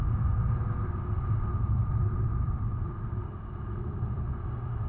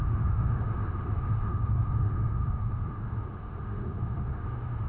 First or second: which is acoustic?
first